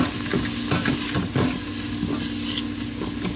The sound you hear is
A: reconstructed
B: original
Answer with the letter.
B